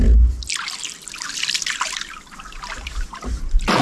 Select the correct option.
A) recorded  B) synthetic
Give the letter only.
A